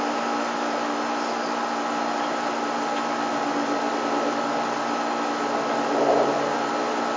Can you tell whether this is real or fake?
real